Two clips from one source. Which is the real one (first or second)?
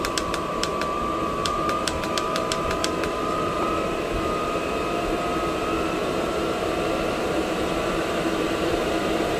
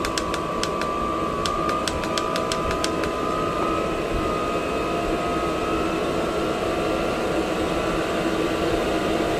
second